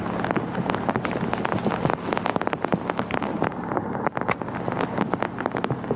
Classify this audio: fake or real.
real